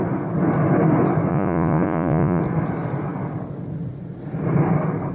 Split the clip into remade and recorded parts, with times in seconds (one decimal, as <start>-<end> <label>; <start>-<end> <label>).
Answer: 0.0-1.3 recorded; 1.3-2.4 remade; 2.4-5.1 recorded